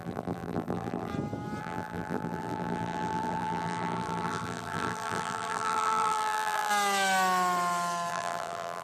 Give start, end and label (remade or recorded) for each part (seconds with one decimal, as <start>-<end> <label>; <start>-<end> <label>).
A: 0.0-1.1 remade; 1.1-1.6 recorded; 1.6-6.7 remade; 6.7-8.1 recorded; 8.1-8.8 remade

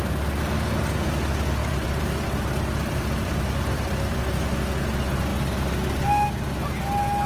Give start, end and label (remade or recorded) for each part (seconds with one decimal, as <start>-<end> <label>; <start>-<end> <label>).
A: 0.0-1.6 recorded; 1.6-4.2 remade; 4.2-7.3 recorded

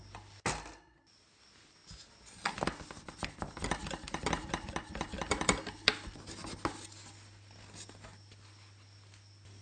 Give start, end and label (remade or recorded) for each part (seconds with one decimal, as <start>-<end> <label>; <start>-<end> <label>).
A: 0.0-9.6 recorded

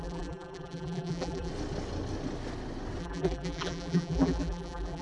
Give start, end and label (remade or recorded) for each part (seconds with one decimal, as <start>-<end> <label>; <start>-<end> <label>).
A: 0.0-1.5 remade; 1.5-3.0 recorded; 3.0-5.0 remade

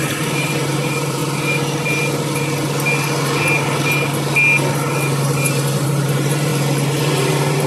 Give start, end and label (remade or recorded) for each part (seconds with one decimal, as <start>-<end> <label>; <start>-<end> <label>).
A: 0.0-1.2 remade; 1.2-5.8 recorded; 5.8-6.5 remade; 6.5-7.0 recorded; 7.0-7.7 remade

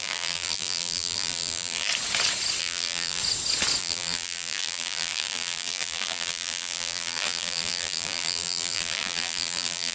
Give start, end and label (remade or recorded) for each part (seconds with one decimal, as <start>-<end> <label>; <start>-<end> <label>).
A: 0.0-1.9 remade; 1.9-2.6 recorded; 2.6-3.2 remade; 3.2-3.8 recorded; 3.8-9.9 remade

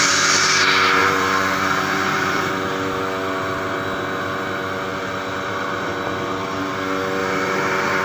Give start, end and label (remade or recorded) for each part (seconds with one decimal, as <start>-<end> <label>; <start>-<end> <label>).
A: 0.0-1.0 recorded; 1.0-2.5 remade; 2.5-4.9 recorded; 4.9-5.9 remade; 5.9-7.2 recorded; 7.2-8.0 remade